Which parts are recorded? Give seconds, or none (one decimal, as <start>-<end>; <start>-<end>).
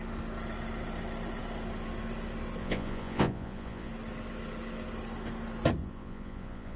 0.0-2.6; 3.9-5.8